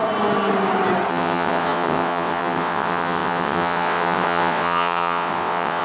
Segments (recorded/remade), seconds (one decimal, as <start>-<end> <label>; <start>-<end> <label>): 0.0-1.1 recorded; 1.1-5.8 remade